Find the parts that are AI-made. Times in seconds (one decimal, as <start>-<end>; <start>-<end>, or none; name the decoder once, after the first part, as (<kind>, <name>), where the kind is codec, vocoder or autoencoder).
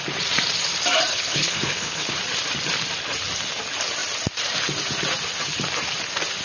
1.1-2.2 (codec, HILCodec)